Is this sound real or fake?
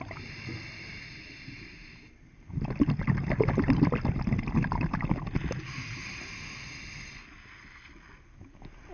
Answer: real